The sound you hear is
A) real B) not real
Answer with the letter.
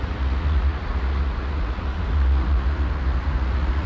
B